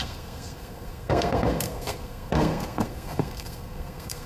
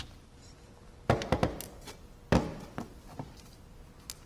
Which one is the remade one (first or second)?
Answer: first